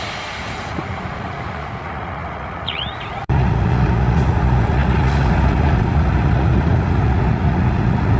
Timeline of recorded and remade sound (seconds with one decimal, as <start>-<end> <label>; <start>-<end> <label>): 0.0-8.2 remade